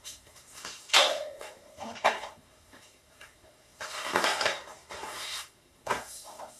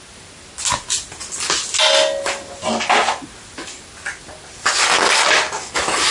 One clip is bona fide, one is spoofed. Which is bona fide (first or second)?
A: second